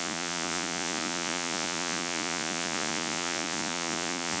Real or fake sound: fake